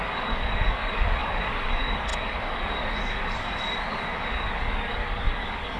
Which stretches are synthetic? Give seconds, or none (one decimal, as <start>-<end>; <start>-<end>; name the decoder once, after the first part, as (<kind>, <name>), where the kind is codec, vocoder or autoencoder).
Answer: 0.0-5.8 (codec, DAC)